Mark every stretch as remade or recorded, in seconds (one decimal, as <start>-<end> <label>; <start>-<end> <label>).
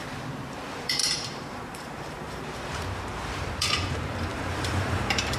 0.0-0.5 recorded; 0.5-5.4 remade